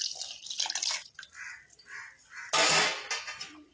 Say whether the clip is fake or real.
real